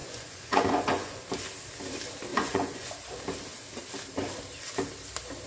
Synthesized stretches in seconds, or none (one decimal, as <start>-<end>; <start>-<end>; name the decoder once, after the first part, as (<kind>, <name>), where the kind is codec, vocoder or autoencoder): 0.0-1.2 (vocoder, Vocos); 2.3-2.9